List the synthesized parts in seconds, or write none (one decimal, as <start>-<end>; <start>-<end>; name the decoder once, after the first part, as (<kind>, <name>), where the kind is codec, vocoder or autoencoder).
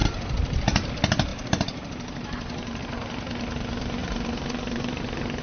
0.0-0.9 (vocoder, BigVGAN v2); 1.3-2.8; 4.0-5.0